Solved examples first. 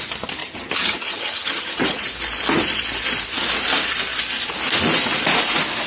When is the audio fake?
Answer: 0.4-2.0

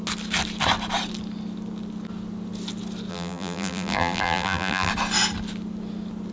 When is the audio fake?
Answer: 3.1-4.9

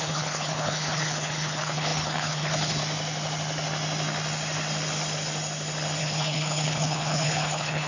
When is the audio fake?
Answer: 0.0-2.8; 6.0-7.9

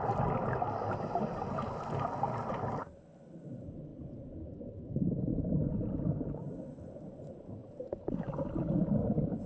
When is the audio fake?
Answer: none